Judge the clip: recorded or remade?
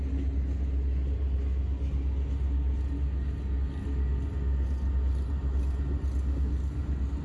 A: recorded